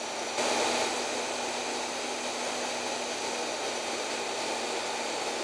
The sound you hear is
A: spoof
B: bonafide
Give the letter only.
B